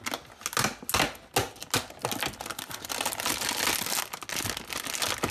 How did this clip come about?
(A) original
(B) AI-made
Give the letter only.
A